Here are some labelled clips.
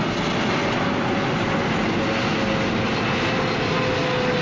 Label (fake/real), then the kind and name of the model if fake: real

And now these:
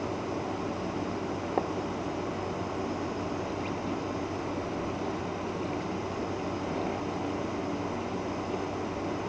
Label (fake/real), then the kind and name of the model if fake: real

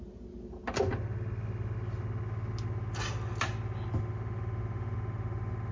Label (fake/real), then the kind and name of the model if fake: real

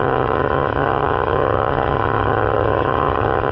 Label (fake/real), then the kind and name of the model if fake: fake, vocoder, HiFi-GAN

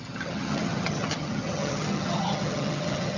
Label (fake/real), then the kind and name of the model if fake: fake, vocoder, HiFi-GAN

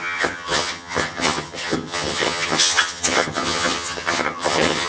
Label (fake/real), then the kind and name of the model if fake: fake, vocoder, HiFi-GAN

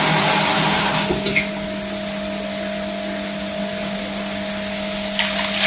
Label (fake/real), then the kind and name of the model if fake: real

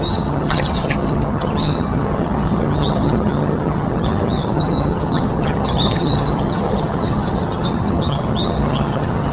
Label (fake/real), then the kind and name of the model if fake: fake, vocoder, HiFi-GAN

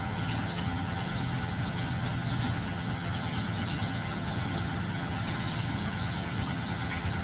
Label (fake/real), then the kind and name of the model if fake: fake, vocoder, HiFi-GAN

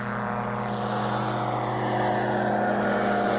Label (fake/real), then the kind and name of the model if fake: real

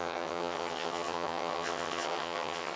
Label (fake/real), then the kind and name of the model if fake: fake, vocoder, HiFi-GAN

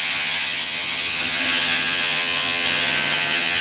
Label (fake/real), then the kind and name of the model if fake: fake, vocoder, HiFi-GAN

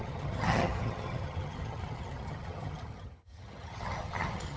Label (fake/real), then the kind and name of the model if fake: fake, vocoder, HiFi-GAN